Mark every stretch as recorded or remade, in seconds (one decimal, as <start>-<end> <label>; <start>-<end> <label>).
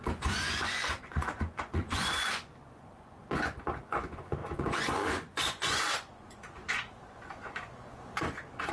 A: 0.0-8.7 remade